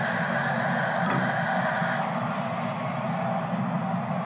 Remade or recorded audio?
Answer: recorded